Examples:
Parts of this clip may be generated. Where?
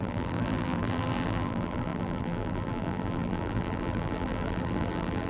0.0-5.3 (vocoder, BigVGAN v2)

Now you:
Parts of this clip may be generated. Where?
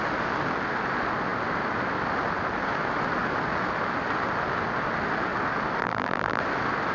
5.8-6.4 (vocoder, BigVGAN v2)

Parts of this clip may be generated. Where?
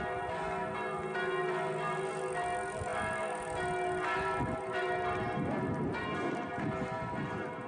none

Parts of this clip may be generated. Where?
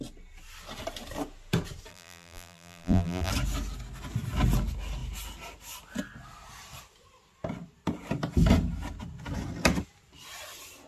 1.9-3.3 (vocoder, BigVGAN v2)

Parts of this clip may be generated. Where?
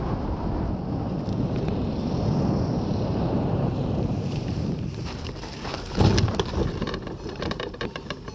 3.1-8.3 (vocoder, BigVGAN v2)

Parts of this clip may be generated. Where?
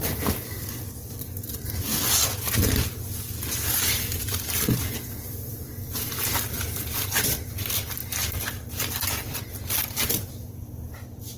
0.0-1.9 (vocoder, BigVGAN v2); 4.1-8.0; 9.1-11.4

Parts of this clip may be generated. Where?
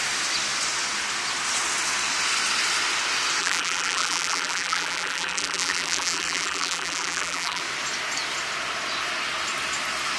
3.4-7.6 (vocoder, BigVGAN v2)